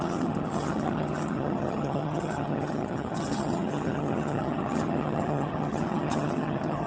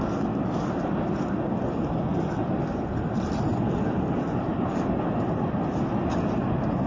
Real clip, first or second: second